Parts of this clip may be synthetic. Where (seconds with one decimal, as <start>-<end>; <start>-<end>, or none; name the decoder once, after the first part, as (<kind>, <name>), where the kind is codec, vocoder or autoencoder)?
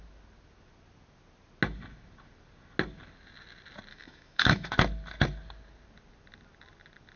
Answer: 3.9-4.7 (autoencoder, DAC-VAE)